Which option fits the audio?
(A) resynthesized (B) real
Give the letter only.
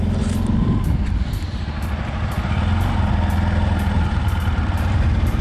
B